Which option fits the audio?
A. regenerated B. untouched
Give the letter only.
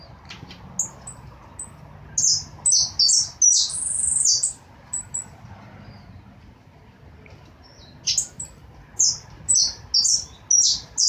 B